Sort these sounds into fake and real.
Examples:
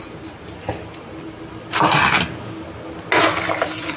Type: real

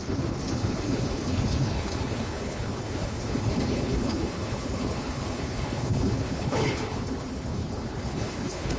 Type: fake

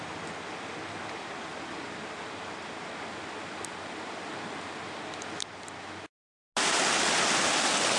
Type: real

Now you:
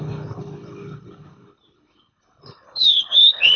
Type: fake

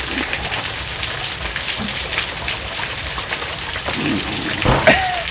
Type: real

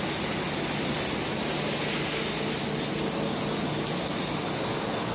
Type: real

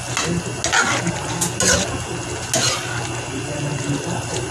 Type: real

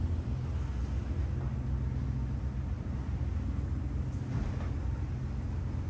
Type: real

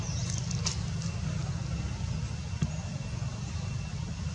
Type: real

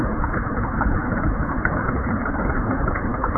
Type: fake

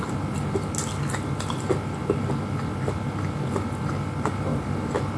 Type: real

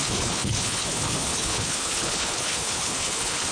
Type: fake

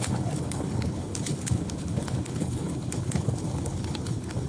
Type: fake